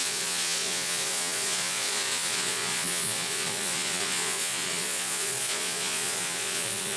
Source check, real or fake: fake